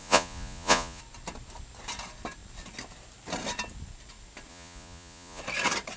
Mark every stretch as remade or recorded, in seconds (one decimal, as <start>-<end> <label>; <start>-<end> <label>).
0.0-1.0 remade; 1.0-4.5 recorded; 4.5-5.4 remade; 5.4-6.0 recorded